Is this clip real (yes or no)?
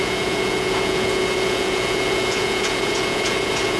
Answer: no